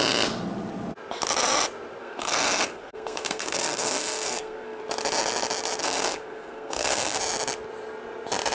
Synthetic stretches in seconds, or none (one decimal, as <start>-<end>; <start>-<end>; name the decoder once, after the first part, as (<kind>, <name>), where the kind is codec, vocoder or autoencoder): 2.0-4.8 (codec, SNAC); 5.8-7.2